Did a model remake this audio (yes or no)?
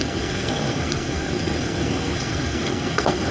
yes